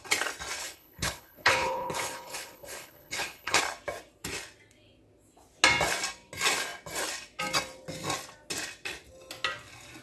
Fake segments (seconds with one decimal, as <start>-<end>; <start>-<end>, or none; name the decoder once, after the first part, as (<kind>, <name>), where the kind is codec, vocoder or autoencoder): 0.6-3.6 (codec, HILCodec)